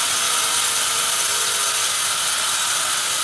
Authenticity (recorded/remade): recorded